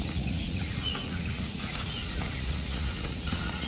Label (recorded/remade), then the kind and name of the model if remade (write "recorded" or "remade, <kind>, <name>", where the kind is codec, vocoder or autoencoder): remade, vocoder, Vocos